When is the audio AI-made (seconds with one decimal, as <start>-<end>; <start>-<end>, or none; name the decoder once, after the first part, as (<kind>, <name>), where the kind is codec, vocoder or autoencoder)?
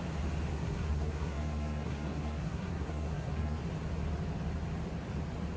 0.5-3.6 (codec, SNAC)